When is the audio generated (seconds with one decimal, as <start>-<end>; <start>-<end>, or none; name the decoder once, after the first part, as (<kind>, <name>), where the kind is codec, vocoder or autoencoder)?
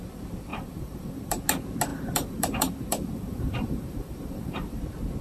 0.5-1.4 (vocoder, BigVGAN v2); 1.9-4.8